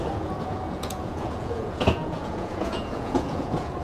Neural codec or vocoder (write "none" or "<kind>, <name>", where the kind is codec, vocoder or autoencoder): vocoder, Vocos